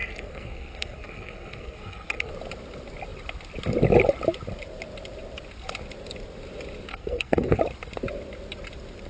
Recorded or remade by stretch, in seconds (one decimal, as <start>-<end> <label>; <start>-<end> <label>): 0.0-2.3 remade; 2.3-6.9 recorded; 6.9-7.6 remade; 7.6-9.1 recorded